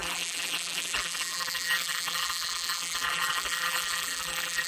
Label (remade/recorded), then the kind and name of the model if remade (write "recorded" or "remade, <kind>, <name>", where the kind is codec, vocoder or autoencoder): remade, vocoder, BigVGAN v2